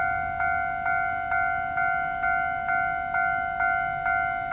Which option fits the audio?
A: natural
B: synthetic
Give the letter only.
A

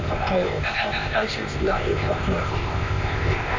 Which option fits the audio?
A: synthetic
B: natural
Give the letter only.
A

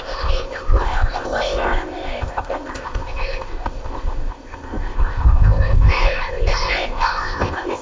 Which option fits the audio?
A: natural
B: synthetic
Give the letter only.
B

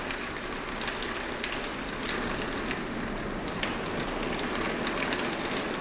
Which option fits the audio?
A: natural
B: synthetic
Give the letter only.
A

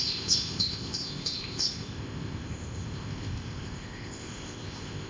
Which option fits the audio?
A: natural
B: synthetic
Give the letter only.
B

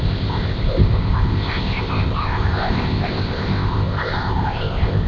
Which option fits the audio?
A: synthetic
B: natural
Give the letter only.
A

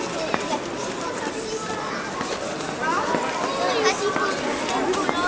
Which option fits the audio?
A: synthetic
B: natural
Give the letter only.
B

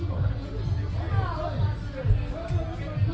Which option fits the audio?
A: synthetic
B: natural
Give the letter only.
B